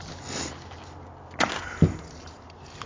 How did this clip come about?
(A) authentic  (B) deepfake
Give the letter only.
A